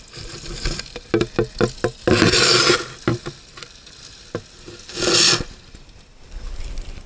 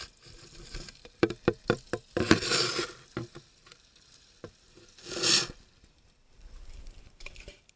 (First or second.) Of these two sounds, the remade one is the second